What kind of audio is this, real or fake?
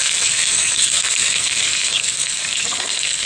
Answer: fake